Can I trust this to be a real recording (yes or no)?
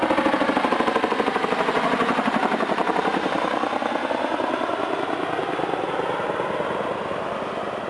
yes